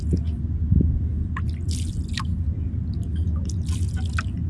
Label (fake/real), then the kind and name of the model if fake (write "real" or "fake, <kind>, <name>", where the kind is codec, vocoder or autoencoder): real